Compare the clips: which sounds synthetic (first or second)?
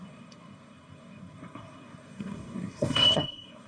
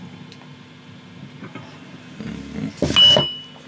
first